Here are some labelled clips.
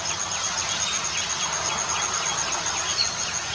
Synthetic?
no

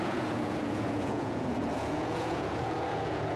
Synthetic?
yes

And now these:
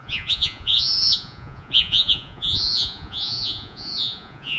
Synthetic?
yes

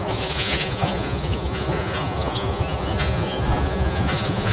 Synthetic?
yes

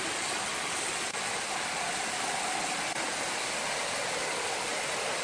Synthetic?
no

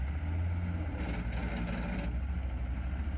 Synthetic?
no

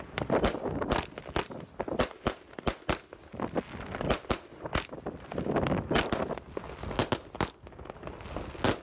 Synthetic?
no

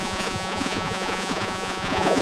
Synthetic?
yes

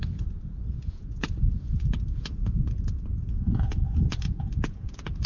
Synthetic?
yes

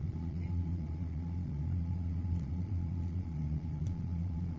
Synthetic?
yes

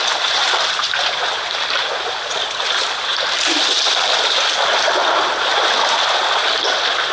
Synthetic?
no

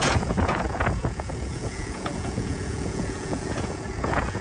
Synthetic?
yes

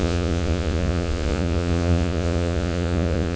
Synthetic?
yes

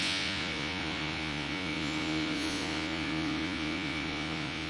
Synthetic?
yes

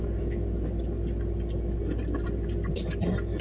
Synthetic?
no